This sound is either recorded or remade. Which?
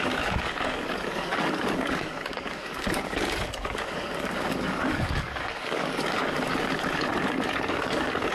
remade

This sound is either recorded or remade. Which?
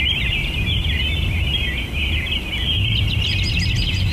recorded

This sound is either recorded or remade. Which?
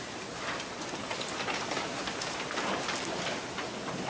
recorded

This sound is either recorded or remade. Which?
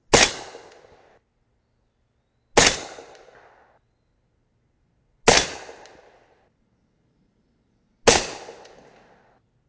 recorded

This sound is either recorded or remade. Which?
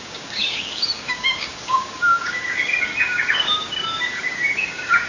remade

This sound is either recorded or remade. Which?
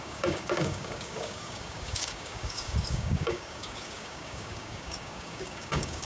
remade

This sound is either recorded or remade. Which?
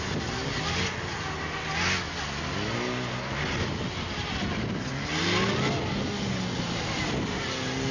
recorded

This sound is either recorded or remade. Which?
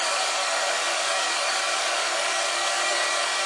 remade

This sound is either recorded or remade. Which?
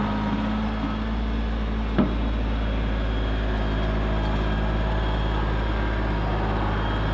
recorded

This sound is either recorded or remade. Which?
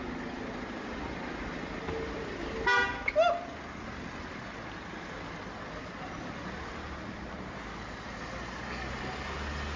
recorded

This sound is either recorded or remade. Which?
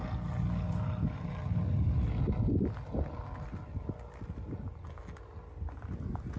recorded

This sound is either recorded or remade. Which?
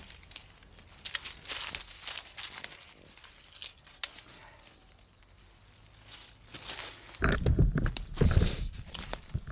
recorded